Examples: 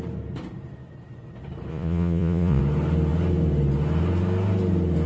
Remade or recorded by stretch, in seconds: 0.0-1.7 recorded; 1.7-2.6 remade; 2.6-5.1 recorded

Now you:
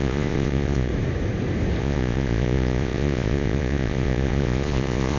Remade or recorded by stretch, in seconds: 0.0-0.9 remade; 0.9-1.8 recorded; 1.8-5.2 remade

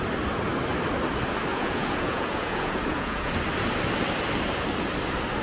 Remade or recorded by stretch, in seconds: 0.0-1.5 recorded; 1.5-3.3 remade; 3.3-5.4 recorded

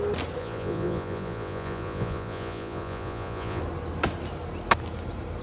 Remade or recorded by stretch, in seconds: 0.0-0.4 recorded; 0.4-3.6 remade; 3.6-5.4 recorded